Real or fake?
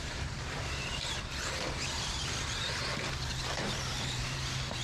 fake